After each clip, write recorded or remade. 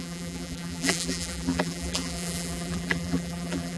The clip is remade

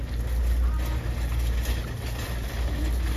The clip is recorded